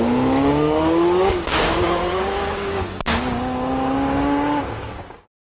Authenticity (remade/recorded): remade